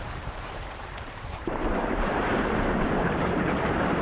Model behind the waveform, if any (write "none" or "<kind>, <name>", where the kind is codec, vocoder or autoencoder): vocoder, BigVGAN v2